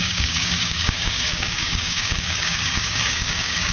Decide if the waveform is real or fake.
fake